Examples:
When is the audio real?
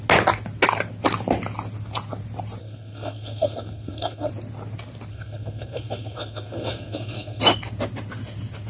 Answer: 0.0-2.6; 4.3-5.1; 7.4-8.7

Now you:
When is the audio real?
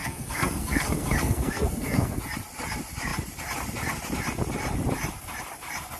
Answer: 2.2-6.0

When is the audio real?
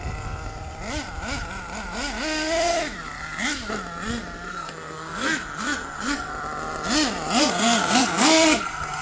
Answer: 0.0-4.5; 6.3-7.4